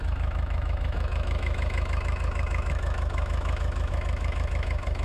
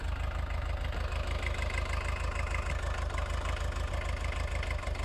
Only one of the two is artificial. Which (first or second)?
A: first